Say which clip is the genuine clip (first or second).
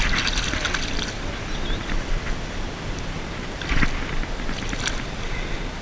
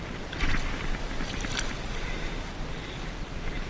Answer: first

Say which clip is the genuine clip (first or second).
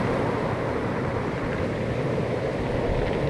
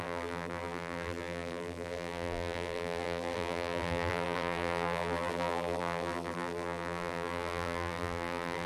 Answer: first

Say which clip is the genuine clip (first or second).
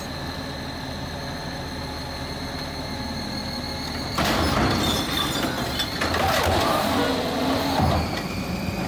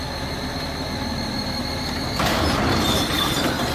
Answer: first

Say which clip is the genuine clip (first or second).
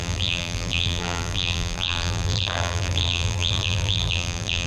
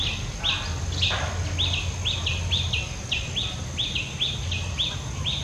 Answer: second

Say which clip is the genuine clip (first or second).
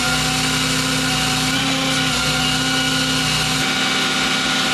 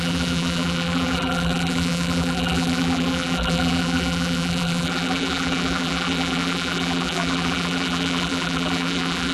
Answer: first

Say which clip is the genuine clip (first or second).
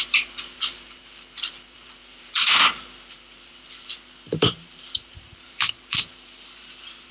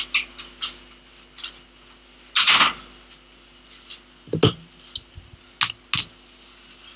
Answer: second